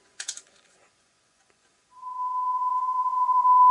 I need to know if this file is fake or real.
fake